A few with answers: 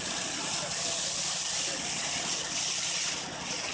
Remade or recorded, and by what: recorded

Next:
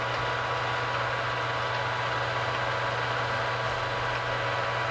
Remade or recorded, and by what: recorded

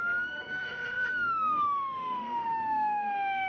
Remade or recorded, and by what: remade, autoencoder, DAC-VAE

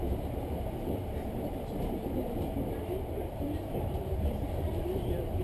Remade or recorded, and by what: remade, vocoder, BigVGAN v2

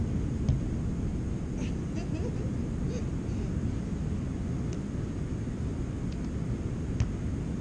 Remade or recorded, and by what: recorded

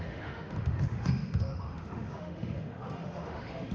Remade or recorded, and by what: remade, autoencoder, DAC-VAE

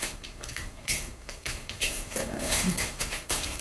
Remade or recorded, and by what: remade, codec, SNAC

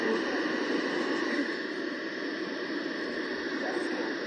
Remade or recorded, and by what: recorded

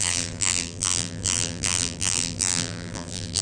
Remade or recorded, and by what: remade, vocoder, BigVGAN v2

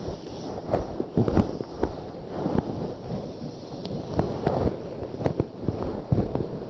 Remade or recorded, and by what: recorded